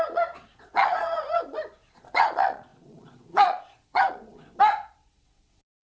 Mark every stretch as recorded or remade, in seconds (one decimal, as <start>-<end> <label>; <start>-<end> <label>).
0.0-5.8 remade